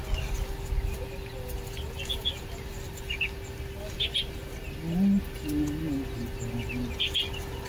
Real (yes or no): yes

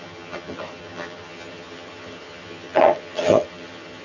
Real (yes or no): no